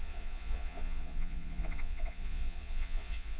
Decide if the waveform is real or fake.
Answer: fake